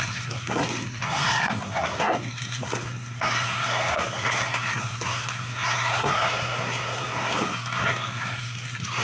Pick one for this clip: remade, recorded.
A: remade